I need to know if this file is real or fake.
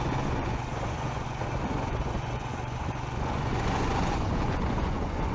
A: fake